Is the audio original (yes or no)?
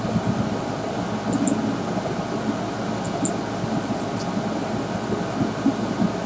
yes